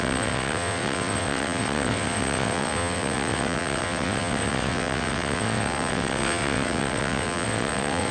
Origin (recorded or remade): remade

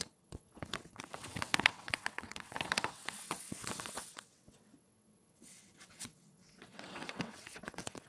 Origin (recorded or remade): remade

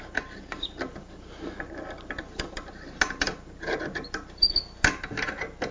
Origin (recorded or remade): recorded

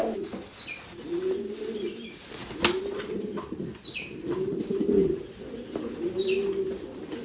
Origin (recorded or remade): recorded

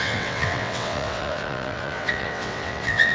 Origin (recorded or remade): remade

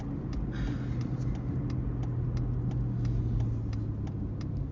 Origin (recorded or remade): recorded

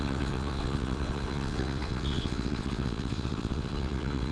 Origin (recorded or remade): remade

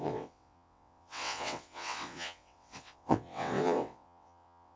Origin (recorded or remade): remade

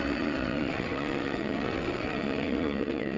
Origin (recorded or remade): remade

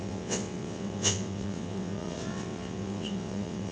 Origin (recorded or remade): remade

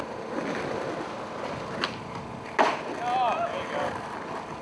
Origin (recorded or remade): recorded